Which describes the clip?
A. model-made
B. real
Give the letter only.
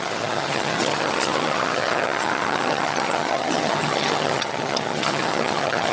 A